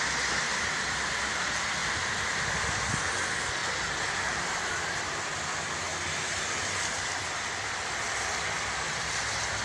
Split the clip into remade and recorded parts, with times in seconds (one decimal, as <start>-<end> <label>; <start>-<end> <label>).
0.0-9.6 recorded